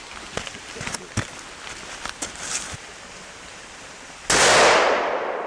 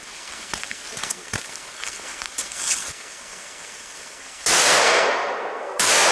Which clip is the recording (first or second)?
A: first